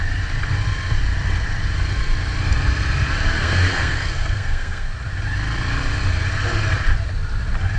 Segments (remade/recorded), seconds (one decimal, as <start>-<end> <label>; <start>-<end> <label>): 0.0-3.4 recorded; 3.4-4.9 remade; 4.9-7.8 recorded

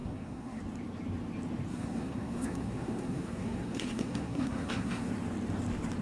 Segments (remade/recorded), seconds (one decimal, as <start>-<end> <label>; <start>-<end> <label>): 0.0-0.6 remade; 0.6-1.7 recorded; 1.7-5.1 remade; 5.1-6.0 recorded